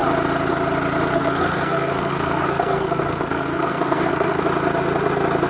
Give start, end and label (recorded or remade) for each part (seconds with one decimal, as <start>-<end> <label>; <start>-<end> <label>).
0.0-1.1 recorded; 1.1-4.4 remade; 4.4-5.5 recorded